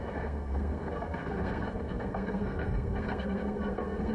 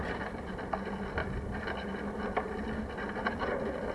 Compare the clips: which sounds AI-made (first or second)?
first